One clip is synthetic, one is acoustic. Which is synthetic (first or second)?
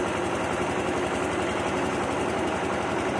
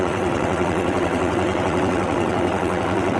second